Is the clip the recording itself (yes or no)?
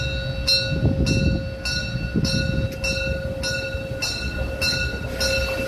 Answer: yes